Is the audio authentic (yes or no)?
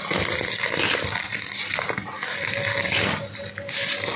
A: yes